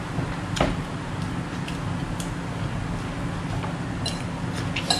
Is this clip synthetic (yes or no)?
no